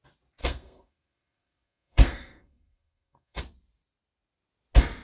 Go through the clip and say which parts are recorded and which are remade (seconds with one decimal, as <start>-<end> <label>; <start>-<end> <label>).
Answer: 0.0-0.4 recorded; 0.4-3.4 remade; 3.4-5.0 recorded